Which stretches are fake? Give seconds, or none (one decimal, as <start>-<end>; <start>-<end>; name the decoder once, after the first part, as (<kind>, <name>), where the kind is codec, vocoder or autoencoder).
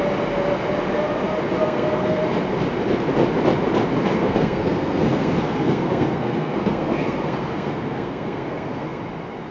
1.6-2.2 (codec, SNAC); 4.0-9.0